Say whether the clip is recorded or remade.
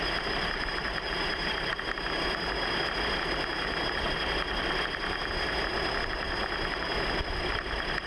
recorded